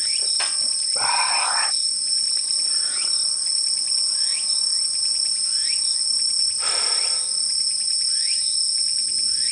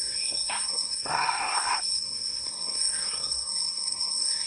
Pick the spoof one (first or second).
second